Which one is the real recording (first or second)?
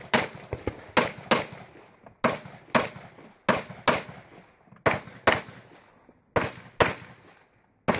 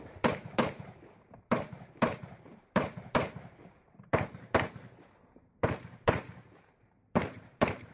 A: first